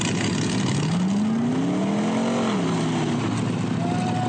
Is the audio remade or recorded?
recorded